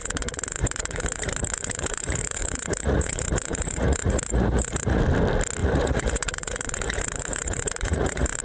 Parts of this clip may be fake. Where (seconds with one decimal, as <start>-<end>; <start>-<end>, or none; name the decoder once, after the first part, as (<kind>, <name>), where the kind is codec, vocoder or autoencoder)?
0.0-5.0 (vocoder, Vocos); 5.6-8.4

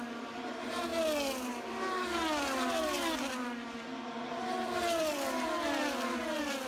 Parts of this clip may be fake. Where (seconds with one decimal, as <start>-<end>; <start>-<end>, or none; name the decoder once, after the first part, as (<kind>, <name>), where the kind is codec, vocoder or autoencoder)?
none